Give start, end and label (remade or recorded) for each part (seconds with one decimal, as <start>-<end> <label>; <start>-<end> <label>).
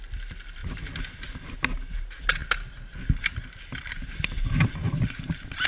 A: 0.0-5.7 recorded